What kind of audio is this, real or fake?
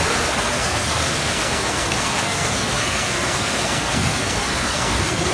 fake